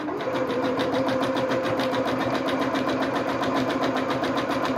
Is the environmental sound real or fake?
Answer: fake